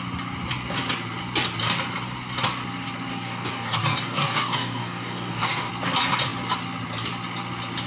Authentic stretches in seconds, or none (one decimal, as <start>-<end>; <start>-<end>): 0.0-3.1; 5.7-7.9